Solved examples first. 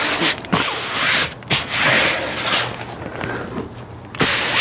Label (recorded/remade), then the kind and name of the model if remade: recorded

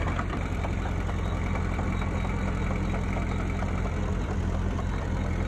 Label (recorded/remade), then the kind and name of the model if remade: recorded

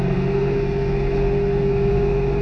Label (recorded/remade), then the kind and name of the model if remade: remade, codec, SNAC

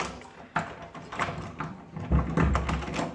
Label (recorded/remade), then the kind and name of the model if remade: recorded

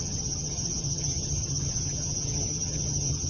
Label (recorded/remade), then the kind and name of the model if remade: remade, vocoder, HiFi-GAN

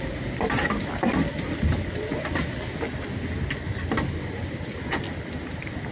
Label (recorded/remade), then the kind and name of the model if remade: recorded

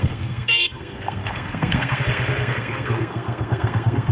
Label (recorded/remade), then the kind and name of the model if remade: remade, codec, SNAC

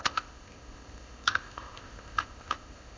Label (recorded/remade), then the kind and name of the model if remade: remade, codec, ZipCodec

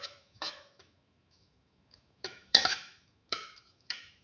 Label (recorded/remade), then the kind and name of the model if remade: remade, autoencoder, DAC-VAE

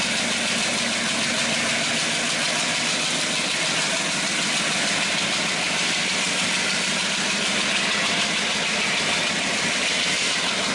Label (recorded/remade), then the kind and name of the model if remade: recorded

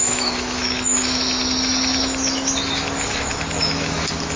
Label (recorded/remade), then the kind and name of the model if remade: remade, autoencoder, DAC-VAE